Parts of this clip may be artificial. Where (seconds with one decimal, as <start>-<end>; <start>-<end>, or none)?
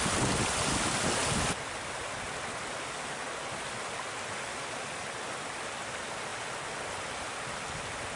none